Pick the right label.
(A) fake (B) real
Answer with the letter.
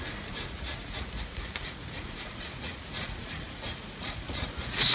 A